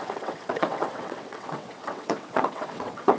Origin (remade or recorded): remade